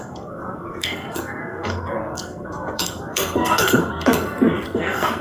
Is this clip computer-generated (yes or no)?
yes